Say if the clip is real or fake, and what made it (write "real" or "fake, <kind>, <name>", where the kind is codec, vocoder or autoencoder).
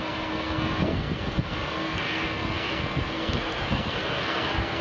fake, codec, SNAC